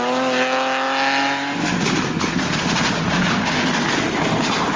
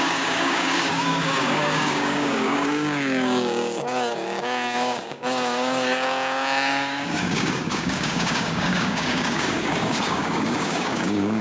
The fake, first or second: second